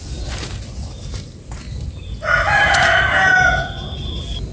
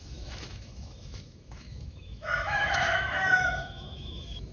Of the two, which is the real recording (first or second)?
first